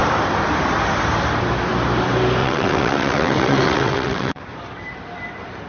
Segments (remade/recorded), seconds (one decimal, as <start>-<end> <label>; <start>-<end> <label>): 0.0-2.4 recorded; 2.4-4.4 remade; 4.4-5.7 recorded